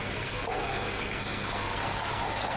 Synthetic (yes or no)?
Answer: yes